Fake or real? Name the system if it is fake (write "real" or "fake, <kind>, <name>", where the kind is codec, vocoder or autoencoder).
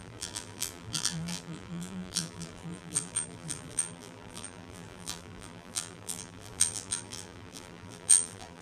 fake, vocoder, BigVGAN v2